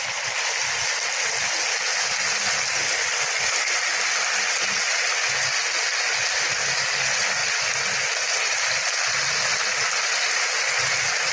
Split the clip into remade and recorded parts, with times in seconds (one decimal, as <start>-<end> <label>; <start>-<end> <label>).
0.0-11.3 recorded